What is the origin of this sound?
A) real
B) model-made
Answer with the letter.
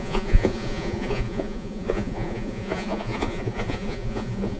B